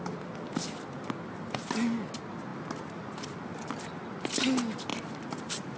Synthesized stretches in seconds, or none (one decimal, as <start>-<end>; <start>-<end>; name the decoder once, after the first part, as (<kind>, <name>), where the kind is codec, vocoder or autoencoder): 4.9-5.8 (vocoder, BigVGAN v2)